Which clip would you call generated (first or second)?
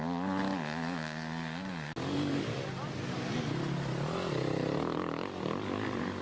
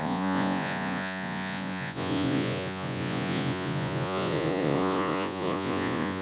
second